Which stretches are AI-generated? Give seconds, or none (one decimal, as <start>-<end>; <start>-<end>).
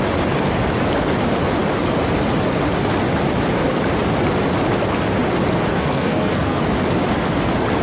5.7-6.6